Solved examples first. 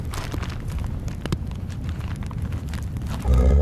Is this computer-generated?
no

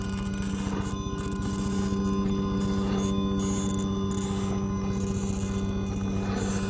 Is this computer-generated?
no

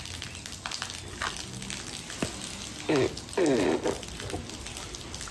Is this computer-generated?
no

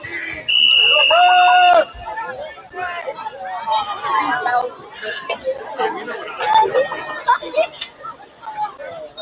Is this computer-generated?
no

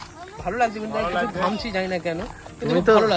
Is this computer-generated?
no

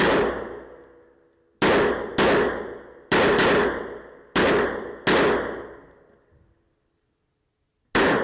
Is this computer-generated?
no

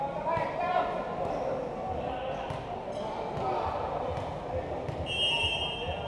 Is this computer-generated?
no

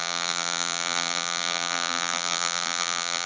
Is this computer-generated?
yes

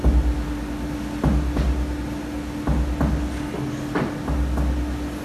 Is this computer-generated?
no